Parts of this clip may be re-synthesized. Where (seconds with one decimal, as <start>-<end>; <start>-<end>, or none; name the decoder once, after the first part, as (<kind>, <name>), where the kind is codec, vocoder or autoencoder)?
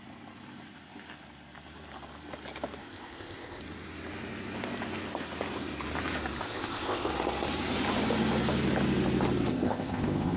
2.8-3.6 (codec, ZipCodec); 6.4-7.1; 9.5-10.4